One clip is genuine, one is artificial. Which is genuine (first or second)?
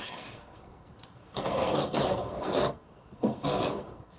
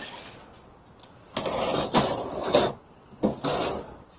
second